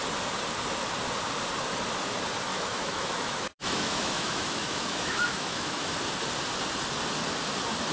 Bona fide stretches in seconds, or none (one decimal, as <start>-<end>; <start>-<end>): 0.0-2.5; 5.9-7.9